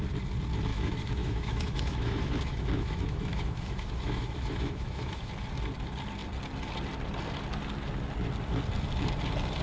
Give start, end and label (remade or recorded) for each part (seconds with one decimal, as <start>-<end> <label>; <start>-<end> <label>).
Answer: 0.0-0.7 recorded; 0.7-5.3 remade; 5.3-9.6 recorded